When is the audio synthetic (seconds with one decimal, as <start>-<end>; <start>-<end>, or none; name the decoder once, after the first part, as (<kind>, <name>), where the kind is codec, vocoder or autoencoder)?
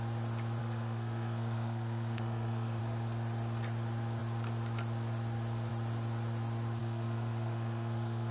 0.6-2.8 (codec, SNAC); 6.8-8.3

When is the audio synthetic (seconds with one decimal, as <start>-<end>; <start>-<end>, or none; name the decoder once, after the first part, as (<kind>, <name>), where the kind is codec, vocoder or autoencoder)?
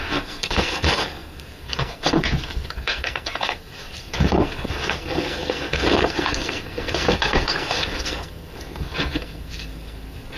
0.0-10.4 (codec, SNAC)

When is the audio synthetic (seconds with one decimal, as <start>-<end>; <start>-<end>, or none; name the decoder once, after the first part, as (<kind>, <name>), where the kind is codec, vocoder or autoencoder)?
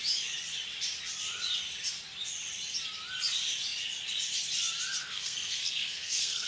5.0-6.5 (codec, SNAC)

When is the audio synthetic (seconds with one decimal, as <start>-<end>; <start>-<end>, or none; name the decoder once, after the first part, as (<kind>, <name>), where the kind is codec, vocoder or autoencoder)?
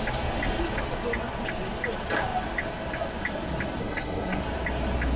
3.8-4.4 (codec, SNAC)